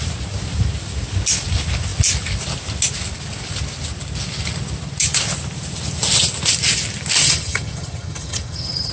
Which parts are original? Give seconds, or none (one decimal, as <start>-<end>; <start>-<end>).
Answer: 0.0-7.2